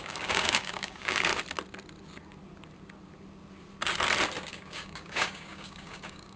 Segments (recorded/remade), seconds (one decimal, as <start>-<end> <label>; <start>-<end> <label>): 0.0-1.3 remade; 1.3-4.5 recorded; 4.5-6.4 remade